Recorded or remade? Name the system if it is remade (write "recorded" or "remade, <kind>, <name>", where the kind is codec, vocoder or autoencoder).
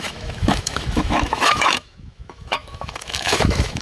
remade, autoencoder, DAC-VAE